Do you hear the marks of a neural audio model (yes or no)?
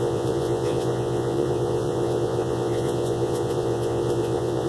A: yes